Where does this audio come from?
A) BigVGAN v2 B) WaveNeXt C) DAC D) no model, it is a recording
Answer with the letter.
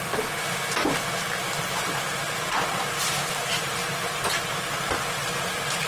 D